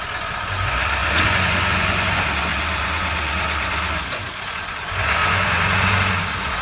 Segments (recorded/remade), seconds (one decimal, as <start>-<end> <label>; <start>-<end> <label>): 0.0-6.6 remade